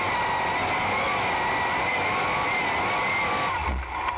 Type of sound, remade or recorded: recorded